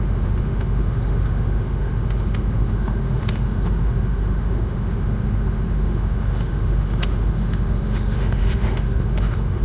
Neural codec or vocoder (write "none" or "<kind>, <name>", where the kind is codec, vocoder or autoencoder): autoencoder, DAC-VAE